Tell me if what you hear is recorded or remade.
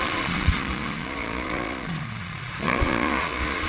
remade